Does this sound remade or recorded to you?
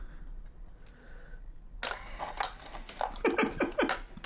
recorded